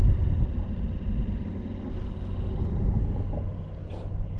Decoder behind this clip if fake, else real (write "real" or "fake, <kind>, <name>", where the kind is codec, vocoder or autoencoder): real